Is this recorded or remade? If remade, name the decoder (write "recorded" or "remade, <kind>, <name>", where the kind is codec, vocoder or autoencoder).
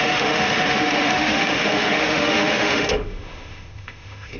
remade, autoencoder, DAC-VAE